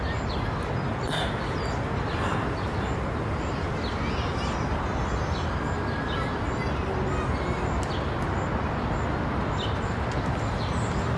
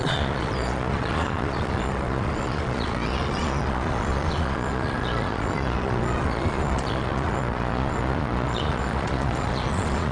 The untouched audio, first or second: first